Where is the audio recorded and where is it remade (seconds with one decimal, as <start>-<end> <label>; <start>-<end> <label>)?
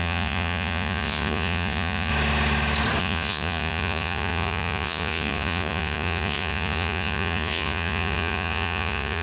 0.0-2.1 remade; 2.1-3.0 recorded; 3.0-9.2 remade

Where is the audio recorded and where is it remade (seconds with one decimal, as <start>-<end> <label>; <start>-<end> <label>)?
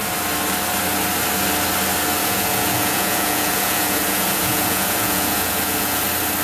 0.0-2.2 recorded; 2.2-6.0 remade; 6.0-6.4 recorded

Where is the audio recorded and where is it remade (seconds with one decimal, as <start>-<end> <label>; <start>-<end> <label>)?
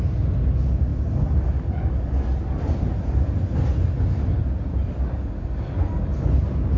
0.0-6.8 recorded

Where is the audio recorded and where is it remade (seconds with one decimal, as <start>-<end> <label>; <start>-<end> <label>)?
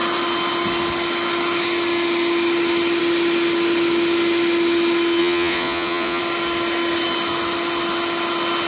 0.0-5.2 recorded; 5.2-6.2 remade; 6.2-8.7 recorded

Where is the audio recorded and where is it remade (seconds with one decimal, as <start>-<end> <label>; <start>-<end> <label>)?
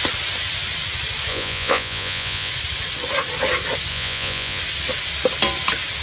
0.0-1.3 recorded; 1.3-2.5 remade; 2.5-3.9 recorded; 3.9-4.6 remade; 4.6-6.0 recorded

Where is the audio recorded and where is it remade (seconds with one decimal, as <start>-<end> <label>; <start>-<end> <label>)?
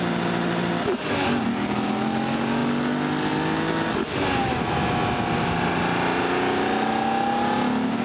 0.0-8.0 recorded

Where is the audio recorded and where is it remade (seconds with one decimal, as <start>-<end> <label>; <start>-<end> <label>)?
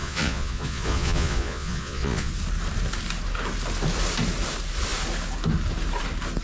0.0-2.3 remade; 2.3-6.4 recorded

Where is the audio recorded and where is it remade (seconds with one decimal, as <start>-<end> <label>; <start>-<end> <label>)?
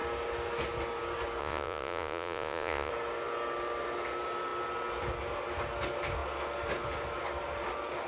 0.0-1.4 recorded; 1.4-2.9 remade; 2.9-8.1 recorded